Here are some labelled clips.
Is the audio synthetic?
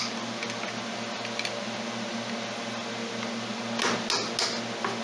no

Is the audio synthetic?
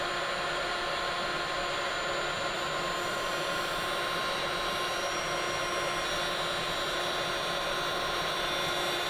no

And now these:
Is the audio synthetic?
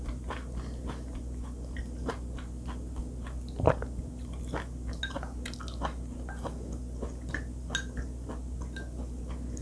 no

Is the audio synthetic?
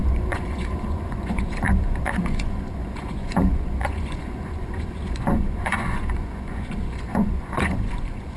yes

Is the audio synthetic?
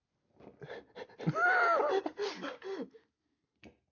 no